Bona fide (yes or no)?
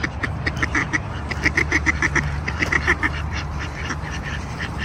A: no